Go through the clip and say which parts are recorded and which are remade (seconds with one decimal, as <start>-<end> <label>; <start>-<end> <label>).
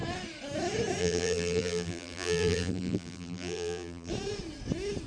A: 0.0-1.0 recorded; 1.0-4.1 remade; 4.1-5.1 recorded